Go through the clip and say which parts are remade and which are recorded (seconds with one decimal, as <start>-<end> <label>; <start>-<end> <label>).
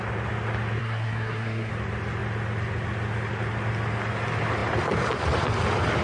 0.0-0.8 recorded; 0.8-1.7 remade; 1.7-6.0 recorded